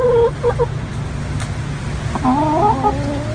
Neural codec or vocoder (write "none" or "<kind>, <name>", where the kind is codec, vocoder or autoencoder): none